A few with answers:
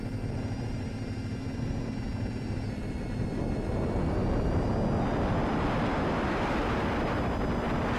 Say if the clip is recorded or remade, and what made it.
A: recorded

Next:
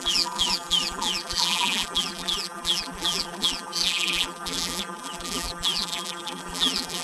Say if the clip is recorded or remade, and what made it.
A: remade, vocoder, BigVGAN v2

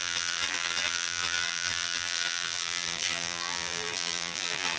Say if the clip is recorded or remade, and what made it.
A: remade, vocoder, BigVGAN v2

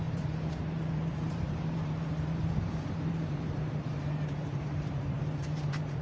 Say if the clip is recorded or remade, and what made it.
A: remade, vocoder, BigVGAN v2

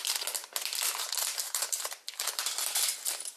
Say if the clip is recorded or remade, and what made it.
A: remade, vocoder, BigVGAN v2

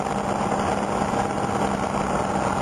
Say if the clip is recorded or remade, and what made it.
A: recorded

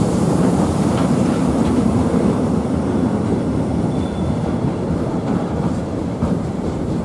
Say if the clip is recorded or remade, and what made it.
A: remade, vocoder, BigVGAN v2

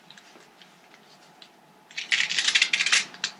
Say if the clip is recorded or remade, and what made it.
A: recorded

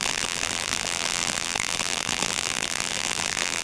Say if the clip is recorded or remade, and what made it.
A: remade, vocoder, BigVGAN v2